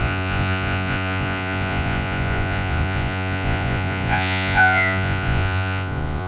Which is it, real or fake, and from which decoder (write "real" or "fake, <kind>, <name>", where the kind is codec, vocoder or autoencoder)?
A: fake, vocoder, Vocos